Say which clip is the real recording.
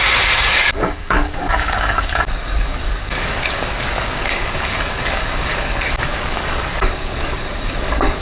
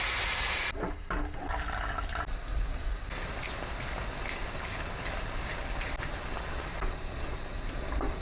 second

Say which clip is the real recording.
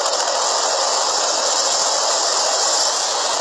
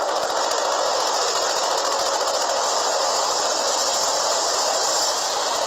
second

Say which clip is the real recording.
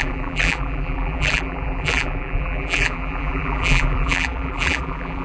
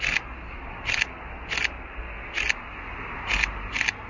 second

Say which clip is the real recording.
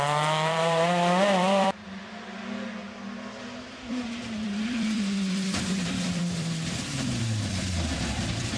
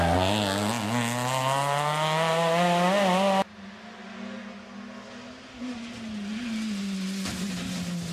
second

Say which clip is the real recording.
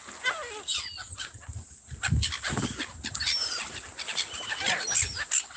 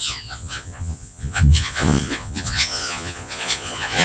first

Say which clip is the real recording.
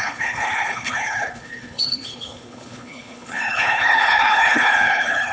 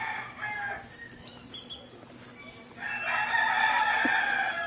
second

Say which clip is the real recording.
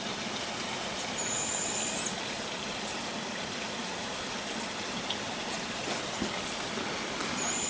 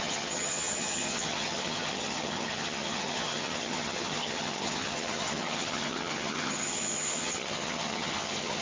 first